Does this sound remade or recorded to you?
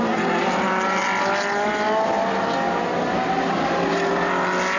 recorded